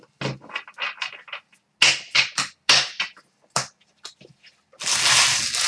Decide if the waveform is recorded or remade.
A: recorded